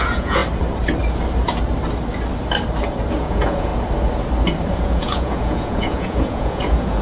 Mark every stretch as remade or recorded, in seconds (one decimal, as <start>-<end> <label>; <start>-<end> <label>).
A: 0.0-0.4 remade; 0.4-3.1 recorded; 3.1-3.7 remade; 3.7-4.7 recorded; 4.7-7.0 remade